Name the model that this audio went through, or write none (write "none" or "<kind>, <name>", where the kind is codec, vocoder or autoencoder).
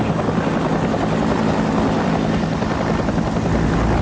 none